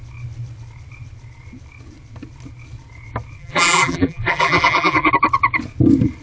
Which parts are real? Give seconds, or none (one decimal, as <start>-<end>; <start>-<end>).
0.0-3.4; 5.1-6.2